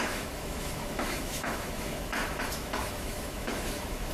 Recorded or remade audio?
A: remade